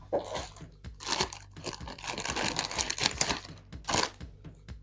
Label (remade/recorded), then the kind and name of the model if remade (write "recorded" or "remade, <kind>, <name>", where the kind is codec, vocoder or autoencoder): recorded